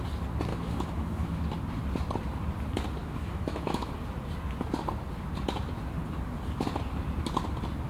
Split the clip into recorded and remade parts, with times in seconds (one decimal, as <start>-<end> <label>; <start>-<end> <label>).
0.0-0.5 recorded; 0.5-1.4 remade; 1.4-3.0 recorded; 3.0-3.9 remade; 3.9-7.9 recorded